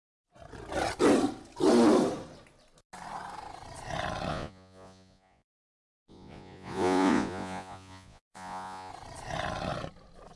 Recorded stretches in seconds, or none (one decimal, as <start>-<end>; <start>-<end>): 0.0-4.3; 8.9-10.4